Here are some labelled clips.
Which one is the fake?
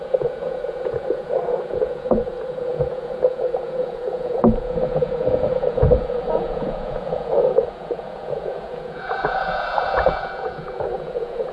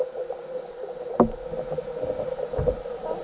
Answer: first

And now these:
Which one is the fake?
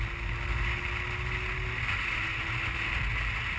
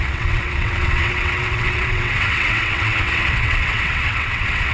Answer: second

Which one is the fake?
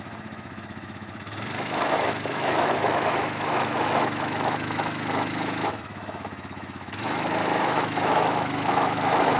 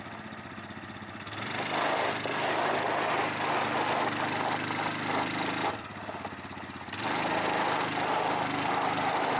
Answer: first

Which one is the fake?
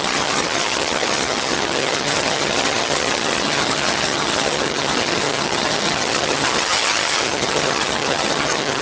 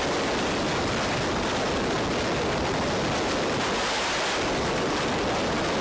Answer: first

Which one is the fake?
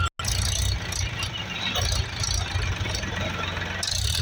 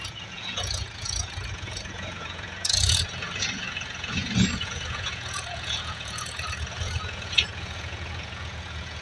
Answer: second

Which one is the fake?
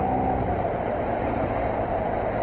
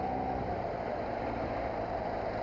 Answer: first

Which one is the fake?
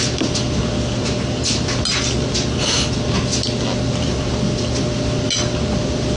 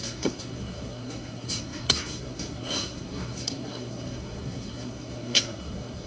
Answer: second